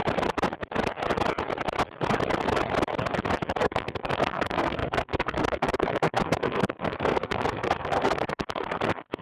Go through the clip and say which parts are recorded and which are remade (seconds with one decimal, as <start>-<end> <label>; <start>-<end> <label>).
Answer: 0.0-3.6 recorded; 3.6-9.2 remade